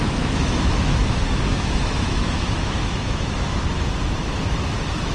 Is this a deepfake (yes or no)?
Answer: yes